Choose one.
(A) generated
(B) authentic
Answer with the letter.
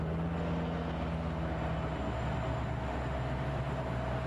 B